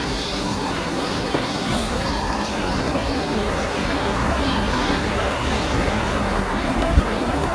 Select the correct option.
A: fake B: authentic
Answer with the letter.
A